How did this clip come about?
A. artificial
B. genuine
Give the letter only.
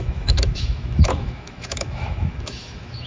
A